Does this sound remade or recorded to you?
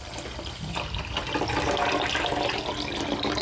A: recorded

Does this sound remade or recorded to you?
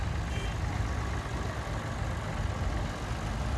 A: recorded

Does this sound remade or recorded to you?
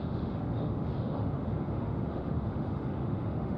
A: remade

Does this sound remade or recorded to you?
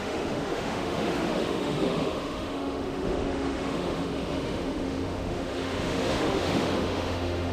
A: remade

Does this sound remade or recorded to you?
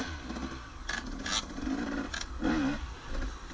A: recorded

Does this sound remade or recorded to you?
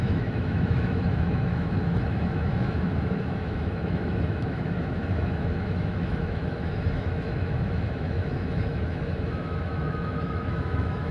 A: remade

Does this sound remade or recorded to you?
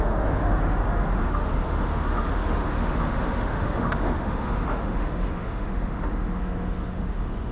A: remade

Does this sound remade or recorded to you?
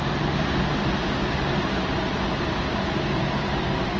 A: recorded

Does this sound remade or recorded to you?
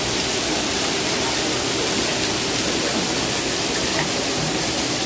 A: recorded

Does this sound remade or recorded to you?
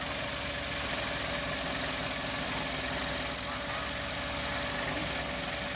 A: recorded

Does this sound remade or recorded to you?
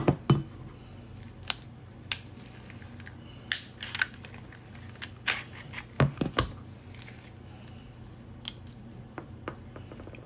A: recorded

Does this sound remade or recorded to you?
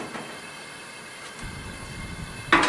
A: recorded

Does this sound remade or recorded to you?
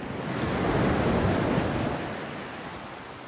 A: recorded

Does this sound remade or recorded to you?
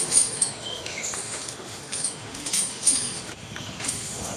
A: remade